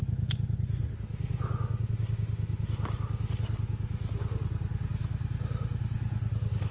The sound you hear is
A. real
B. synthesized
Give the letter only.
A